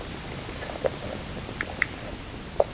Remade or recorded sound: recorded